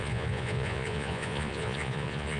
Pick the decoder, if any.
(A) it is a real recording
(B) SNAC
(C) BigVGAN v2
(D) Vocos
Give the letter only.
D